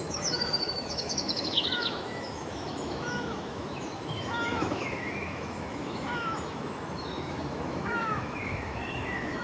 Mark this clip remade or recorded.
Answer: remade